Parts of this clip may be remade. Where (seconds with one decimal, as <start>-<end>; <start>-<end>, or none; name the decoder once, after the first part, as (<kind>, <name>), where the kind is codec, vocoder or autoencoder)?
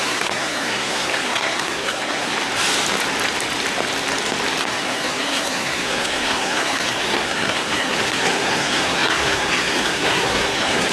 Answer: 0.0-2.3 (codec, SNAC); 4.7-10.9